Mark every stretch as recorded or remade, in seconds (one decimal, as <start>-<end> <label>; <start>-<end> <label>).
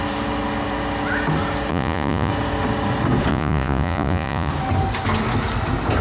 0.0-1.7 recorded; 1.7-2.3 remade; 2.3-3.3 recorded; 3.3-4.5 remade; 4.5-6.0 recorded